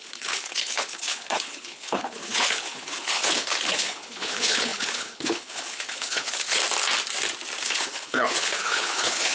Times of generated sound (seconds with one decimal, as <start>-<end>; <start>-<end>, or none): 0.0-6.6; 7.6-9.3